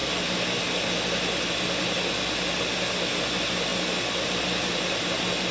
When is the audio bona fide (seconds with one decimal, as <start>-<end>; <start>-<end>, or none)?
0.0-5.5